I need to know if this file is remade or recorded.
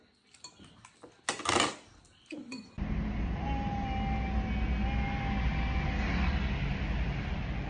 recorded